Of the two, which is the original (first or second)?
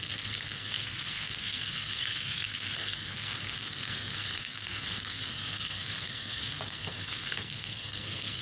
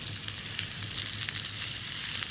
second